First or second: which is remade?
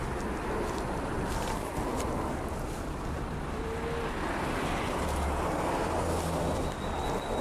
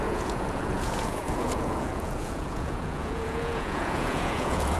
second